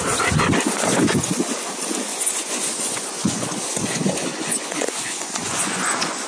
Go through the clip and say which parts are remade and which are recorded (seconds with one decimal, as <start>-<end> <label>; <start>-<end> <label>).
0.0-0.9 recorded; 0.9-1.5 remade; 1.5-2.1 recorded; 2.1-6.3 remade